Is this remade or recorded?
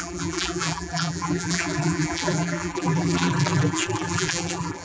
remade